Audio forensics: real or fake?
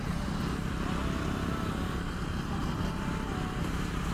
real